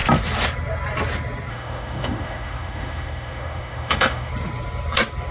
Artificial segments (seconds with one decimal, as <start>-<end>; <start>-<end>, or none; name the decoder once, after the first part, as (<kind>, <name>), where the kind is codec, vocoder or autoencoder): 1.5-4.3 (autoencoder, DAC-VAE)